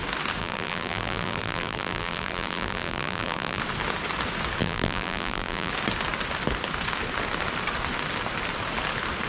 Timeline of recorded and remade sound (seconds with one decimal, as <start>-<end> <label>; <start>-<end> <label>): 0.0-0.4 recorded; 0.4-3.6 remade; 3.6-4.6 recorded; 4.6-5.7 remade; 5.7-9.3 recorded